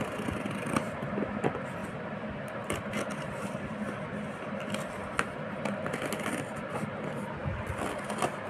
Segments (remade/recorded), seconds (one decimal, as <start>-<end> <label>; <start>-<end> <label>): 0.0-8.5 recorded